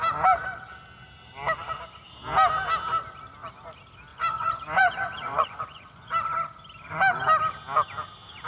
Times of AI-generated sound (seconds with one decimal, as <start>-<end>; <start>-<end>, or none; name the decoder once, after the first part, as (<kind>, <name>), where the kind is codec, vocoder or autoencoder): 4.1-6.1 (vocoder, Vocos)